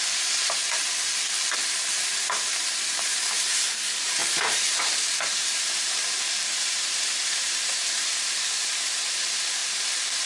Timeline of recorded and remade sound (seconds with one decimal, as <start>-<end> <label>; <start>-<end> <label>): 0.0-0.6 remade; 0.6-2.0 recorded; 2.0-9.6 remade; 9.6-10.3 recorded